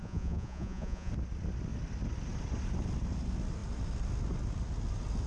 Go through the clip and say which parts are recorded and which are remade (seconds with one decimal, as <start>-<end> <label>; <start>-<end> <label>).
0.0-1.1 remade; 1.1-5.3 recorded